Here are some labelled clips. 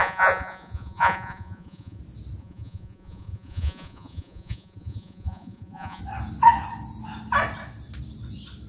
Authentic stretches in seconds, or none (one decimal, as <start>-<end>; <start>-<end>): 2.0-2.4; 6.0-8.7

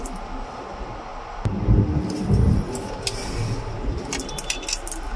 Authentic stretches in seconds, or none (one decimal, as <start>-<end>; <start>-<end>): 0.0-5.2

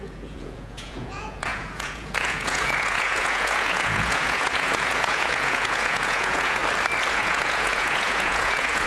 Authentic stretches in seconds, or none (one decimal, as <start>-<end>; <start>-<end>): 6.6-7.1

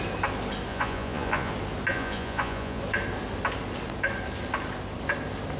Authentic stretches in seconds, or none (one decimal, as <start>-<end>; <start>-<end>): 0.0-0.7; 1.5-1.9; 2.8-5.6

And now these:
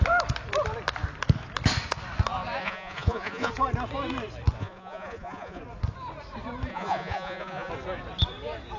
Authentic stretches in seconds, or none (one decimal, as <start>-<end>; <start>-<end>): 0.0-2.6; 3.5-4.6; 5.6-6.7; 7.7-8.8